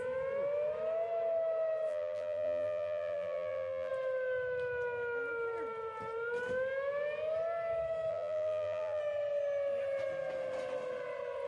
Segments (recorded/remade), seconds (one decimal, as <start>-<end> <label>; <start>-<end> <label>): 0.0-1.9 recorded; 1.9-3.9 remade; 3.9-8.1 recorded; 8.1-9.0 remade; 9.0-11.5 recorded

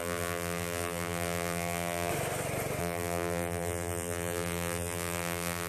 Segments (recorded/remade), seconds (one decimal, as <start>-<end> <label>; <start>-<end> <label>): 0.0-2.1 remade; 2.1-2.8 recorded; 2.8-5.7 remade